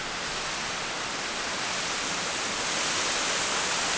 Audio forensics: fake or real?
real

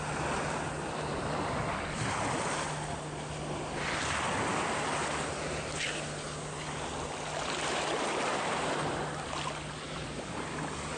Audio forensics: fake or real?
real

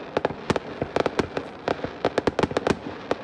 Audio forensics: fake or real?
real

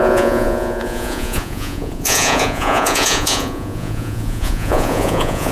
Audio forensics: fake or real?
fake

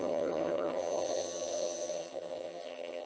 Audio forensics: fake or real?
fake